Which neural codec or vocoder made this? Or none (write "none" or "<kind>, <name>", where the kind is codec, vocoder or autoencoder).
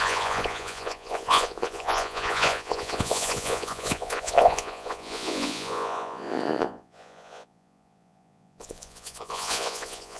vocoder, Vocos